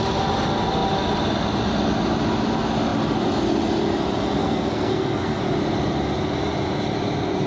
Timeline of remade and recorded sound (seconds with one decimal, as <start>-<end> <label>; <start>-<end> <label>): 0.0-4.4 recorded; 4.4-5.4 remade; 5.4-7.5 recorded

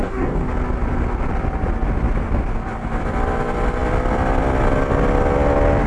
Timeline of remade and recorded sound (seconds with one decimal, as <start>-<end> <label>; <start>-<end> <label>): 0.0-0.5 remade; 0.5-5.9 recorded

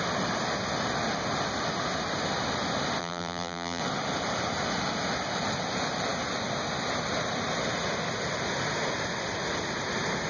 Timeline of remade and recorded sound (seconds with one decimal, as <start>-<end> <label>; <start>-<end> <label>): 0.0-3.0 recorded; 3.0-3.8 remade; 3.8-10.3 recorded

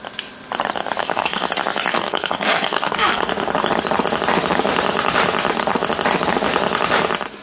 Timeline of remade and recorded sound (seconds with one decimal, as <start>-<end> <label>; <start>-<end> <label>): 0.0-1.0 recorded; 1.0-1.5 remade; 1.5-1.9 recorded; 1.9-3.3 remade; 3.3-7.4 recorded